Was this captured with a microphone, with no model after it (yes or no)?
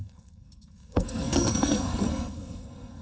no